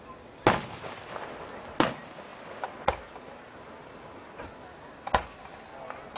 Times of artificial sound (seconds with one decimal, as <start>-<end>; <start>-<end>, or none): none